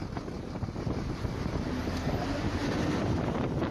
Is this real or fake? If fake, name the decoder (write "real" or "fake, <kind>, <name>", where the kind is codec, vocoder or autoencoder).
real